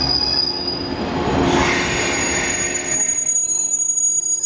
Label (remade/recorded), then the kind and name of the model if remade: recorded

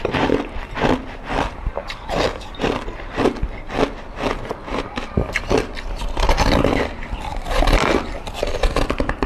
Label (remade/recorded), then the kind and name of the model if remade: remade, vocoder, BigVGAN v2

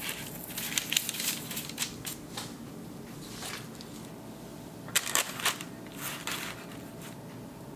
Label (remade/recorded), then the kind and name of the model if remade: recorded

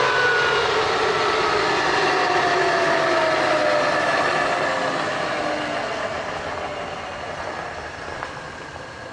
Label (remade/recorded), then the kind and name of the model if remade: recorded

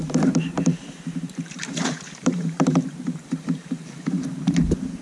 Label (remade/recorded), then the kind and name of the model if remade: remade, vocoder, BigVGAN v2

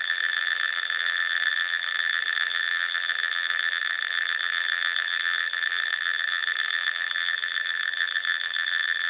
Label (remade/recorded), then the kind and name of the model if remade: remade, vocoder, BigVGAN v2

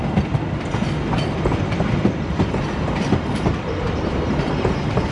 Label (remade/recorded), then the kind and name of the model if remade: remade, vocoder, BigVGAN v2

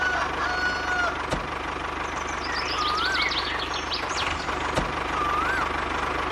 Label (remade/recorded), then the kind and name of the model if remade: recorded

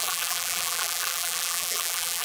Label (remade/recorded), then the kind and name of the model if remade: remade, vocoder, BigVGAN v2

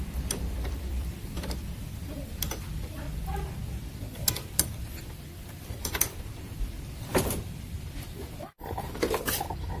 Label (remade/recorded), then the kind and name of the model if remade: remade, vocoder, BigVGAN v2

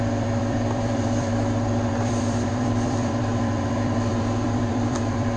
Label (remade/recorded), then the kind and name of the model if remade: remade, vocoder, BigVGAN v2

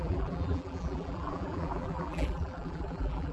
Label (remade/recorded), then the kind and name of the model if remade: remade, vocoder, BigVGAN v2